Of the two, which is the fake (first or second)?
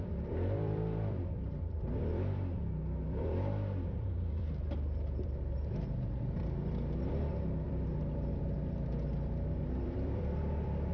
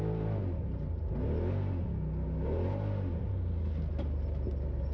first